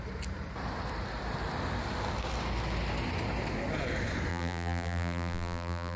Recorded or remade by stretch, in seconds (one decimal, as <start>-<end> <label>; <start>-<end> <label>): 0.0-4.3 recorded; 4.3-6.0 remade